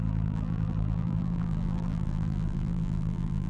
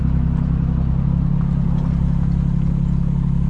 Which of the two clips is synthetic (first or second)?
first